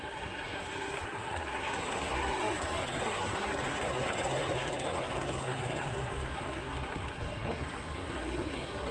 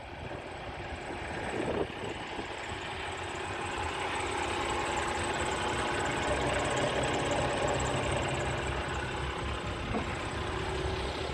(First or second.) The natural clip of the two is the second